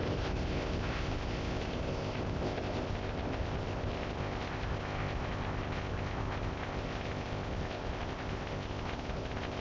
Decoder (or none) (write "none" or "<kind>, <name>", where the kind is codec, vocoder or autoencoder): codec, ZipCodec